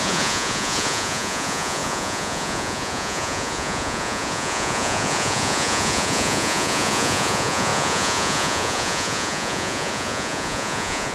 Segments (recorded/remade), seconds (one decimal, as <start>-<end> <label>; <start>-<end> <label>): 0.0-11.1 remade